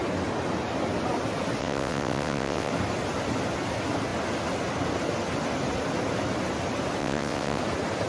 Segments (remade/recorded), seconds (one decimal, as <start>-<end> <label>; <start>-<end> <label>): 0.0-1.6 recorded; 1.6-2.7 remade; 2.7-7.0 recorded; 7.0-7.6 remade; 7.6-8.1 recorded